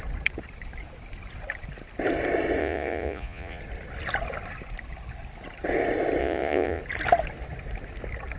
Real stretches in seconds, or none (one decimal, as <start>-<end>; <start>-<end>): 0.0-2.6; 3.6-6.2; 6.8-8.4